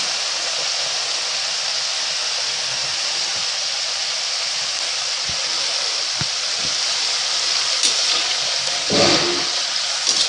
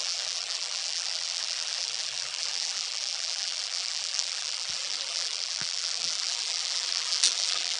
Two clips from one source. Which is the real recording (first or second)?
first